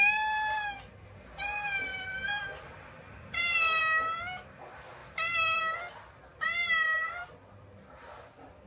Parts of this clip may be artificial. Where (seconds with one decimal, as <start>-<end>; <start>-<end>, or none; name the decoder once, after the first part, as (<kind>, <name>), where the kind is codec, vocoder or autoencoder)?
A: 1.9-3.8 (vocoder, BigVGAN v2); 5.0-5.6; 6.3-7.2